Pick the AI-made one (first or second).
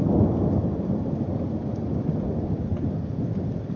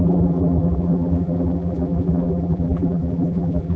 second